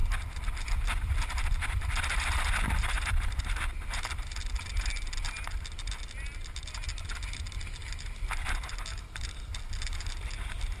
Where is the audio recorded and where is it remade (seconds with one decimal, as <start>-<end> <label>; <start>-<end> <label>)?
0.0-10.8 recorded